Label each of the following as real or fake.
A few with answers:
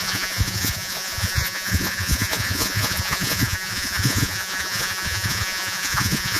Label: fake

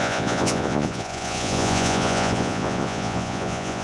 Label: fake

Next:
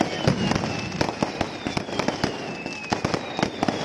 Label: real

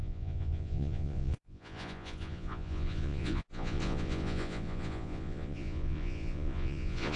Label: fake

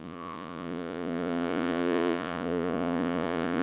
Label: fake